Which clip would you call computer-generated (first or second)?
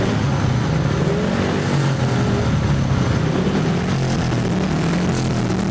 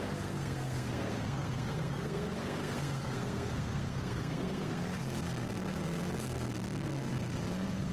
second